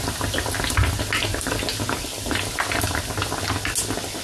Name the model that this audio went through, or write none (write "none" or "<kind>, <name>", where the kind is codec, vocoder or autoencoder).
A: none